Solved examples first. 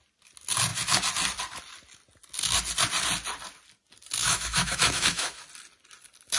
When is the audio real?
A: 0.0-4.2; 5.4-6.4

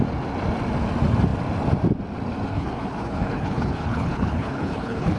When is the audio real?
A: 0.0-2.5

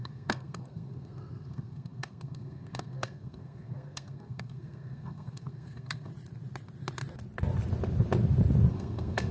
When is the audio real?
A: 6.1-8.7

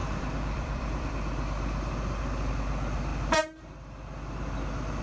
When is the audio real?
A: 1.1-5.0